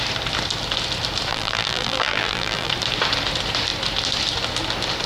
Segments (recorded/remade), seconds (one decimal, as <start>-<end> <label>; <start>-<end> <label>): 0.0-1.3 recorded; 1.3-2.7 remade; 2.7-5.1 recorded